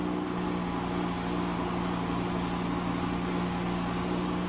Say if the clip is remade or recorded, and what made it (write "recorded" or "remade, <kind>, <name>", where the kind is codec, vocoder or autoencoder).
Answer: recorded